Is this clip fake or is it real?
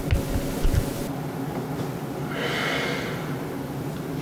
real